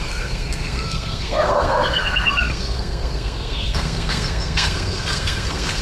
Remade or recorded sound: remade